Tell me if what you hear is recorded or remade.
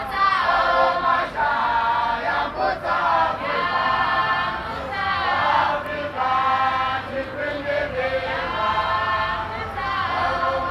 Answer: recorded